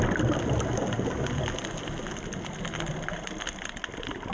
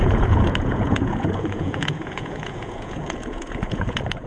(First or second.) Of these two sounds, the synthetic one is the second